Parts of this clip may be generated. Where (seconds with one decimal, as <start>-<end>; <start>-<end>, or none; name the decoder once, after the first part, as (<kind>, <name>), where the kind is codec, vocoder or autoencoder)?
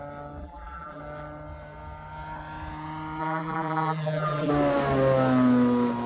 0.4-1.0 (vocoder, BigVGAN v2); 3.2-4.5